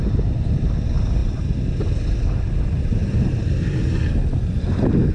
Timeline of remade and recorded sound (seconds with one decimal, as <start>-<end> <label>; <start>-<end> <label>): 0.0-5.1 recorded